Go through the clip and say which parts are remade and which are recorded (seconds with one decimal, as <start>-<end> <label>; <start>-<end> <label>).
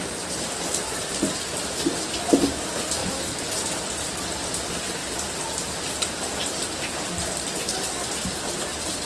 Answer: 0.0-3.0 remade; 3.0-4.5 recorded; 4.5-9.1 remade